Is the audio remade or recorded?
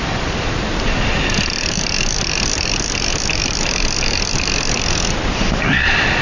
remade